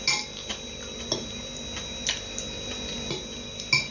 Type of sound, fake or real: real